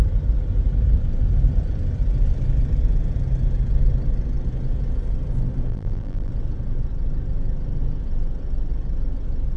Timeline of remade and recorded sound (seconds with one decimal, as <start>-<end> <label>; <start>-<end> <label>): 0.0-5.7 recorded; 5.7-6.3 remade; 6.3-9.6 recorded